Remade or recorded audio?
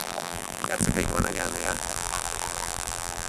remade